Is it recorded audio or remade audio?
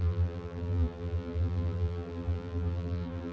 remade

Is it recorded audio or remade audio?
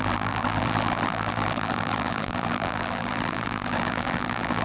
remade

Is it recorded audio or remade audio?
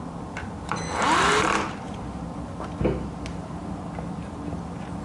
recorded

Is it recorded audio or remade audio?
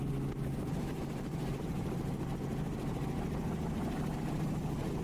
recorded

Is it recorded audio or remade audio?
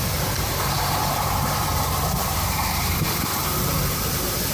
remade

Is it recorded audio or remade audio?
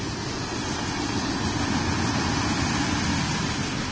recorded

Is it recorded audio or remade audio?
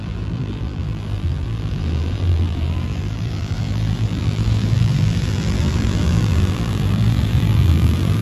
remade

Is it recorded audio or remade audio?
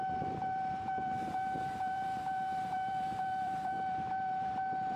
remade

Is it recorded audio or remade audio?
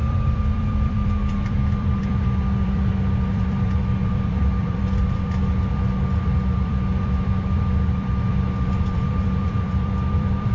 remade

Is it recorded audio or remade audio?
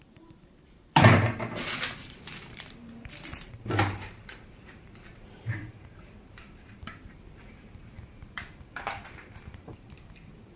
remade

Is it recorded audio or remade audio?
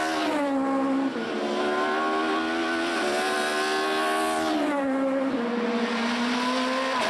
recorded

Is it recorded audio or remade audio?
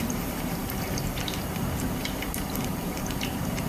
remade